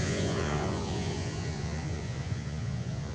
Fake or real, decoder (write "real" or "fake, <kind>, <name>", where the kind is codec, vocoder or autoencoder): fake, vocoder, Vocos